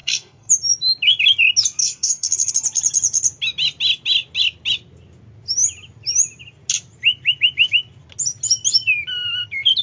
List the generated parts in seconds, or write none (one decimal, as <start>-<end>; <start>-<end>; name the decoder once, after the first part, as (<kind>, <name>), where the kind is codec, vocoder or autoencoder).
0.0-0.5 (codec, SNAC); 1.8-2.5